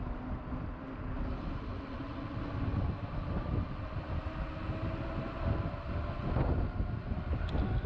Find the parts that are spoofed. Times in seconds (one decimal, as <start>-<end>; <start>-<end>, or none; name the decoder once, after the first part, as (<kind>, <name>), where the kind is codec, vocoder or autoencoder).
none